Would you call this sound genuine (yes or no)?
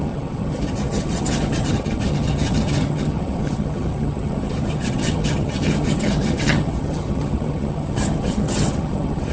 no